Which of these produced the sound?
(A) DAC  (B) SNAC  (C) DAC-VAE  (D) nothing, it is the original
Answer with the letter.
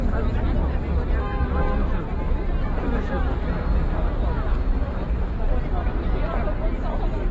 D